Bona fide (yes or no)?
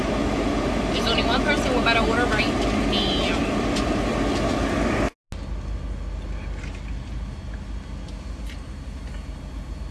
yes